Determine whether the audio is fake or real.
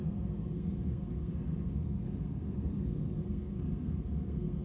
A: fake